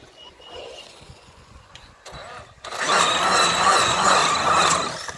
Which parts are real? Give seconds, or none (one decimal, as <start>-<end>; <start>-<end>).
2.2-3.6; 4.2-5.2